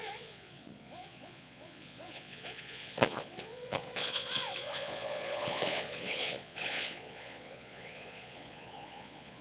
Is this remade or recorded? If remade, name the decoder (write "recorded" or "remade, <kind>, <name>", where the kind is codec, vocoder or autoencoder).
remade, vocoder, Vocos